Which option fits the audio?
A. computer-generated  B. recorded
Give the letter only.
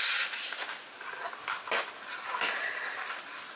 B